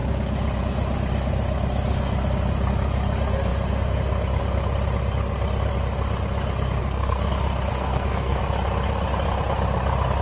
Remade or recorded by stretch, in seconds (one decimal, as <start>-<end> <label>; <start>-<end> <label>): 0.0-6.8 recorded; 6.8-7.3 remade; 7.3-7.7 recorded; 7.7-8.4 remade; 8.4-10.2 recorded